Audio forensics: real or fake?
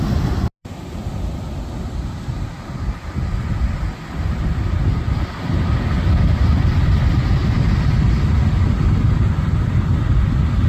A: real